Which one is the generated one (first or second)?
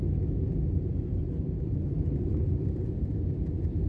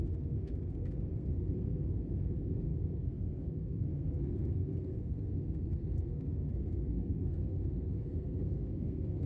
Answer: second